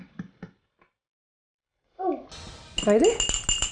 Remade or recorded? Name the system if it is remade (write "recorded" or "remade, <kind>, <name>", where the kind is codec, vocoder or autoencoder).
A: recorded